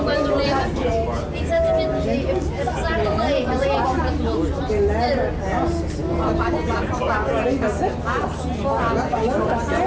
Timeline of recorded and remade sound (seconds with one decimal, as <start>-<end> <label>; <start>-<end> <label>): 0.0-9.9 recorded